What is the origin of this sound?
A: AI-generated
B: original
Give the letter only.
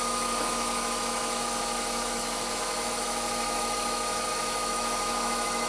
A